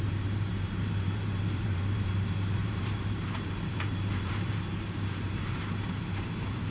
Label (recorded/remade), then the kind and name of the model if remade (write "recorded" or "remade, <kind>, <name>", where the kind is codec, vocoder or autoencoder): remade, vocoder, BigVGAN v2